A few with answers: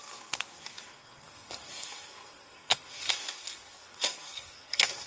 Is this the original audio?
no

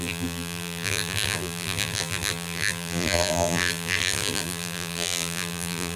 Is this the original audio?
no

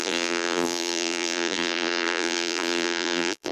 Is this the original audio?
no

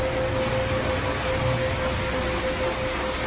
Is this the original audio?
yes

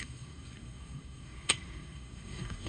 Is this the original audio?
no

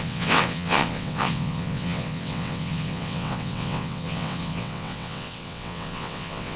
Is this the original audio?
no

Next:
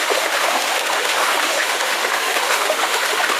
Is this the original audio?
no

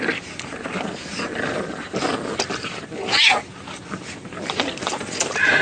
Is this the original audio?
yes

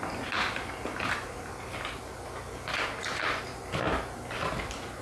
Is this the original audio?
yes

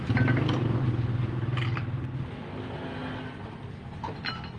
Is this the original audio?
yes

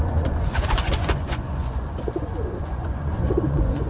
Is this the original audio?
no